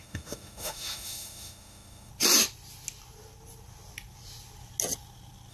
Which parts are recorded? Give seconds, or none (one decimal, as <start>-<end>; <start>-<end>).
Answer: 2.1-5.5